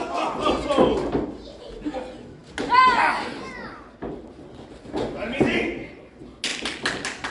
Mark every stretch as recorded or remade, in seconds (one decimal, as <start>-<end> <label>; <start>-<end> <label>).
0.0-7.3 recorded